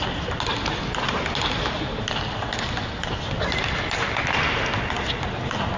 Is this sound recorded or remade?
recorded